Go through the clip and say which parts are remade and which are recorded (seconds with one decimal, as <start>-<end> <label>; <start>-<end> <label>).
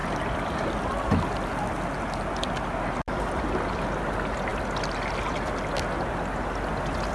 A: 0.0-7.1 recorded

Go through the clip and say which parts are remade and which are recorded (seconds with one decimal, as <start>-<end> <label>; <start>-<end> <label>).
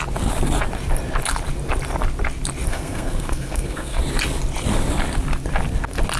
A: 0.0-2.7 recorded; 2.7-4.0 remade; 4.0-6.2 recorded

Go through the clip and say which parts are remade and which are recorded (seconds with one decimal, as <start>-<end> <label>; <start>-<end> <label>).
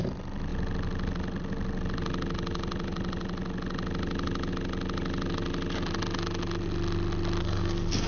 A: 0.0-7.4 recorded; 7.4-8.1 remade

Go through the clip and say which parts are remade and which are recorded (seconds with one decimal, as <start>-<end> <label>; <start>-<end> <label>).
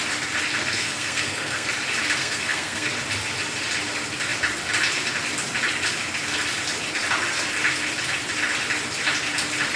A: 0.0-0.6 recorded; 0.6-1.7 remade; 1.7-2.2 recorded; 2.2-2.9 remade; 2.9-9.8 recorded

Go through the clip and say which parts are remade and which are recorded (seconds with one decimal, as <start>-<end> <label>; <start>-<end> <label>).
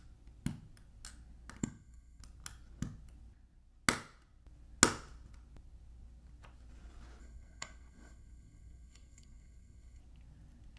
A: 0.0-1.6 recorded; 1.6-2.2 remade; 2.2-7.2 recorded; 7.2-10.0 remade; 10.0-10.8 recorded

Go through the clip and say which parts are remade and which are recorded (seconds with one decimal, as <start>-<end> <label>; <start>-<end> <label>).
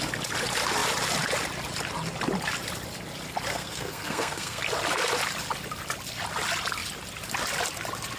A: 0.0-3.5 recorded; 3.5-4.6 remade; 4.6-8.2 recorded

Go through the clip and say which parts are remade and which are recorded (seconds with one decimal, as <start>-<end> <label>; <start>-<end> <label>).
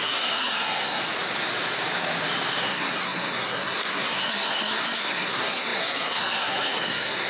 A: 0.0-1.0 remade; 1.0-2.6 recorded; 2.6-7.3 remade